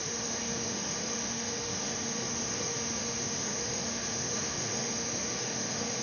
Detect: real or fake fake